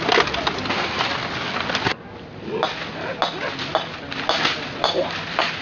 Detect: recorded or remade recorded